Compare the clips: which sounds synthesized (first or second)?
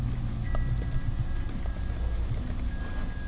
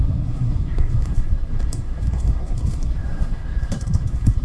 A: second